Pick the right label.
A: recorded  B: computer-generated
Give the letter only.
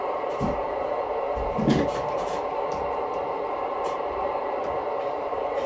B